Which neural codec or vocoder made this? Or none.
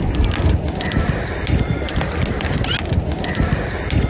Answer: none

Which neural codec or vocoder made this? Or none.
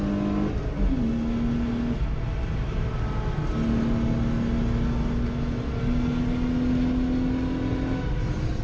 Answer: none